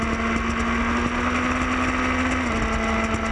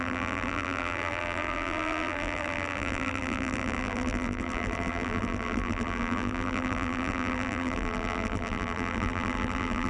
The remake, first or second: second